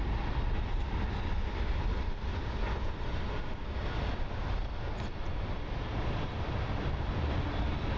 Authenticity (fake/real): real